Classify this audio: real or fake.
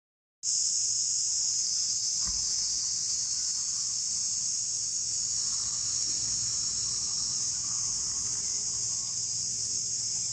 real